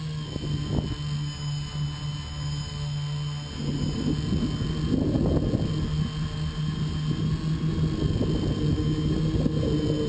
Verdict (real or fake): real